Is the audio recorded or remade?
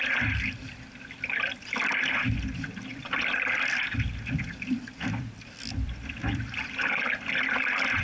remade